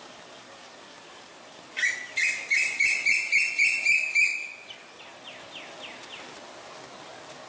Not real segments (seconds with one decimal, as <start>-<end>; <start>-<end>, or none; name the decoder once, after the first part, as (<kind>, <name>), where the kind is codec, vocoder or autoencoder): 0.4-2.9 (vocoder, BigVGAN v2); 4.3-5.0